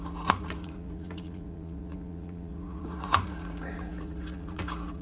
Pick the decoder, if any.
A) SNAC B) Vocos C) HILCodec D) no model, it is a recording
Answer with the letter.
B